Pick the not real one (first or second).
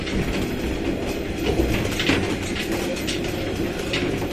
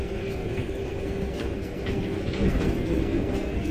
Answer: second